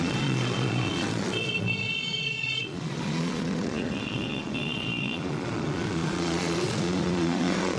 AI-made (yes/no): yes